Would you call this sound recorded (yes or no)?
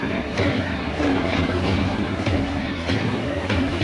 no